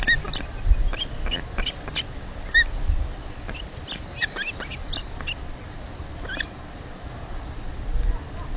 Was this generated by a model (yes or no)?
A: no